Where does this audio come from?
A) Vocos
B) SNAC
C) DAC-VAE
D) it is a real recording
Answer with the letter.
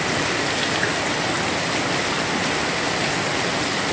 D